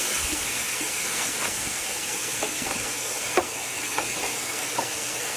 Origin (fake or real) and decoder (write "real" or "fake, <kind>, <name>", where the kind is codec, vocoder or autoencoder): fake, codec, SNAC